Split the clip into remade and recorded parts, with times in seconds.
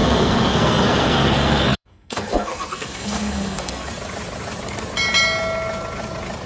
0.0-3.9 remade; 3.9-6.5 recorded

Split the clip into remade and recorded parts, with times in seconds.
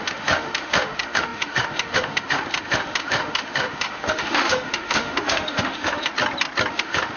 0.0-6.1 remade; 6.1-6.7 recorded; 6.7-7.2 remade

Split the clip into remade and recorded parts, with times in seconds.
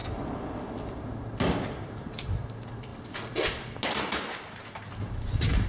0.0-5.7 recorded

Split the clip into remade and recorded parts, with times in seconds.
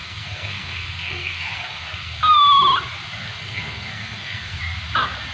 0.0-2.2 remade; 2.2-3.4 recorded; 3.4-4.6 remade; 4.6-5.3 recorded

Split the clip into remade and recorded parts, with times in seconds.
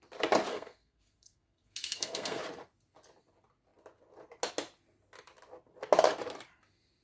0.0-0.5 recorded; 0.5-2.4 remade; 2.4-7.0 recorded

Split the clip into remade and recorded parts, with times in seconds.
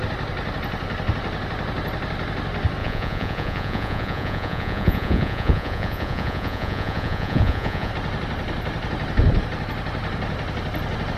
0.0-2.8 recorded; 2.8-7.9 remade; 7.9-11.2 recorded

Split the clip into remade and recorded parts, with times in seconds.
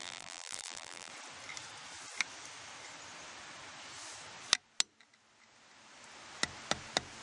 0.0-1.1 remade; 1.1-7.2 recorded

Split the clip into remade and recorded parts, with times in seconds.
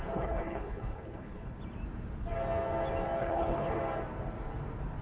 0.0-1.6 remade; 1.6-3.2 recorded; 3.2-3.8 remade; 3.8-5.0 recorded